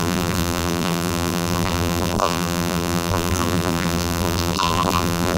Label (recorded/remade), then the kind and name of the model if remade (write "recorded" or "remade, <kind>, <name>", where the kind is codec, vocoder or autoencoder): remade, vocoder, BigVGAN v2